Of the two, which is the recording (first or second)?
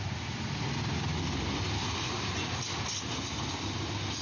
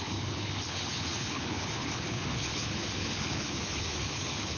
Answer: first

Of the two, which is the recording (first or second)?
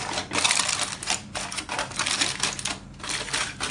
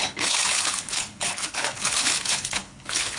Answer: first